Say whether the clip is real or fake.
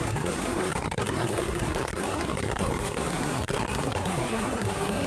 fake